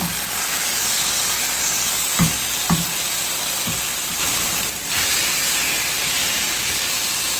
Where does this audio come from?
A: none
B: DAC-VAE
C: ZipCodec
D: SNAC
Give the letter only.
A